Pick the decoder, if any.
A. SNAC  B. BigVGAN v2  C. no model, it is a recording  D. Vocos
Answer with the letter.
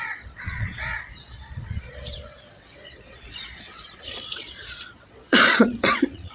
D